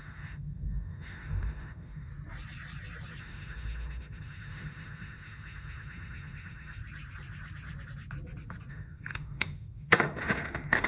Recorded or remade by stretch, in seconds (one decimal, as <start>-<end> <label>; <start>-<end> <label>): 0.0-2.1 remade; 2.1-3.2 recorded; 3.2-6.8 remade; 6.8-8.7 recorded; 8.7-10.9 remade